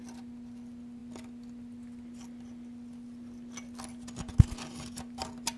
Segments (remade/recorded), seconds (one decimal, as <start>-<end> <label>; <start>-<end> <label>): 0.0-5.6 recorded